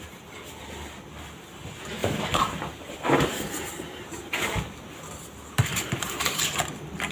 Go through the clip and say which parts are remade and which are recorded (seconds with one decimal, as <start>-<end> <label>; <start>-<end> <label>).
0.0-2.0 recorded; 2.0-4.5 remade; 4.5-5.7 recorded; 5.7-6.4 remade; 6.4-7.1 recorded